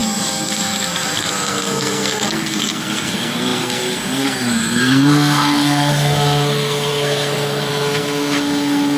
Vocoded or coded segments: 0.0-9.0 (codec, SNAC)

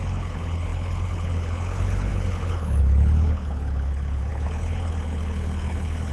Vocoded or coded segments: 0.0-6.1 (codec, HILCodec)

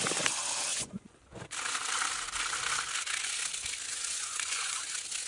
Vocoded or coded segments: 0.7-1.4 (vocoder, Vocos); 3.9-4.8